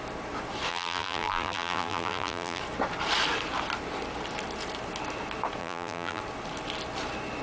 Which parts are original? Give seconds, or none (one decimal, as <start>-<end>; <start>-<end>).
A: 0.0-0.7; 2.6-5.6; 6.2-7.4